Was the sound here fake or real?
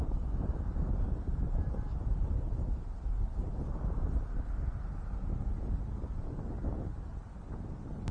real